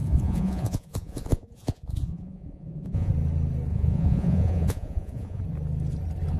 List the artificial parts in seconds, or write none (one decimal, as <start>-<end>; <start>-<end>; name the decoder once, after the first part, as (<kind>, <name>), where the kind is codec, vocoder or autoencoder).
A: 0.0-3.1 (vocoder, Vocos); 3.7-5.4